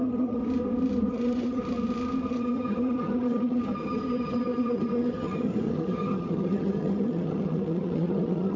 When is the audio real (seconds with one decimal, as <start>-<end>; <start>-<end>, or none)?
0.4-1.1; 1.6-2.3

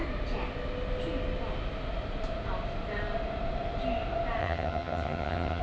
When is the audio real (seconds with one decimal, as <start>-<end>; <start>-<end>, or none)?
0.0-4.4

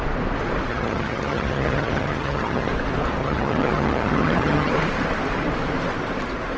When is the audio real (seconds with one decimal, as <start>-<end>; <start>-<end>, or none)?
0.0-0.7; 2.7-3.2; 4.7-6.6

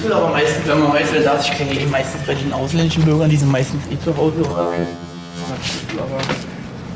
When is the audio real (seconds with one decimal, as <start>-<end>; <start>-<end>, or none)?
0.0-4.5; 5.5-7.0